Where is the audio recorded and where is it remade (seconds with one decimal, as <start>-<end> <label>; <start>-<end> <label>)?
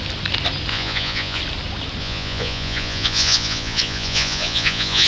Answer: 0.0-0.7 recorded; 0.7-1.4 remade; 1.4-2.0 recorded; 2.0-5.1 remade